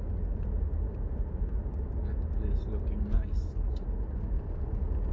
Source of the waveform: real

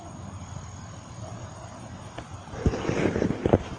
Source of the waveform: real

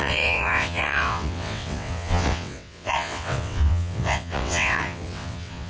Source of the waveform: fake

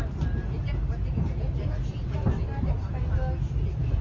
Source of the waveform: real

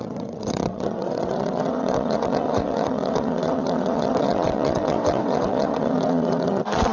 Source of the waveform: fake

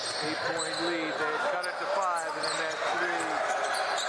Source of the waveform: real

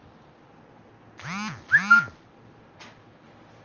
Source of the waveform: real